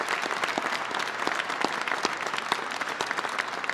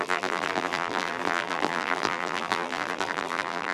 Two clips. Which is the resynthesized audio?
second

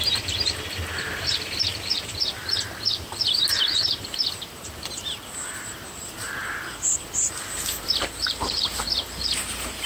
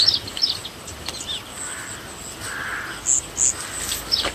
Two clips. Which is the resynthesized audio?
first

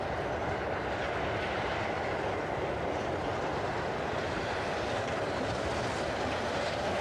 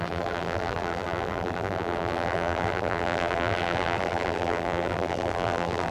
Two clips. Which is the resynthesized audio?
second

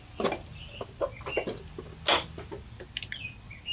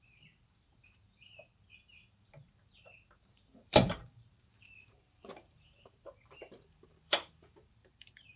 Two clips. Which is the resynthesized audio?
second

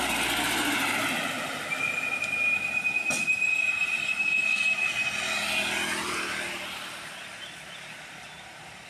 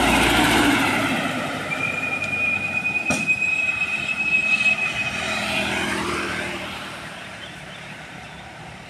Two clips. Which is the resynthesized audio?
second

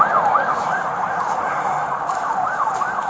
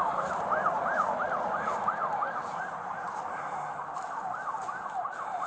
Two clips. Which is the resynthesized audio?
first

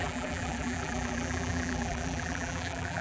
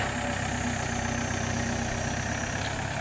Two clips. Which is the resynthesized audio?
first